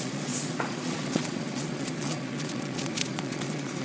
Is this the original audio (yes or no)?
no